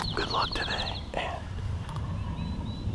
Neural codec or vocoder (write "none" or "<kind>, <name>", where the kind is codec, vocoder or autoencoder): none